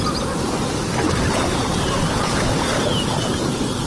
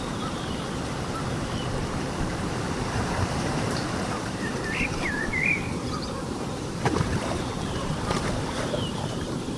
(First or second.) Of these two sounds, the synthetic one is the second